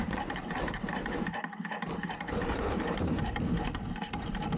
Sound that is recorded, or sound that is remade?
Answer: remade